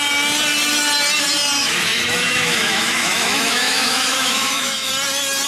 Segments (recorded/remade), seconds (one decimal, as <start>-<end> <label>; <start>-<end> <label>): 0.0-1.6 recorded; 1.6-4.9 remade; 4.9-5.5 recorded